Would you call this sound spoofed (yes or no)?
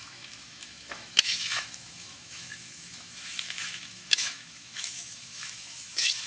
yes